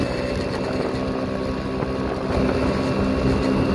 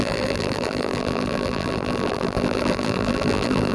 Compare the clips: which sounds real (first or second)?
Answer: first